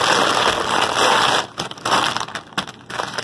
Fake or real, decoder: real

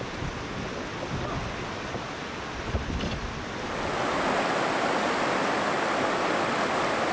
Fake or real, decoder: real